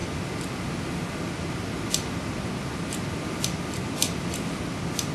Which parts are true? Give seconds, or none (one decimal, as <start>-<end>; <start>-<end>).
0.0-5.1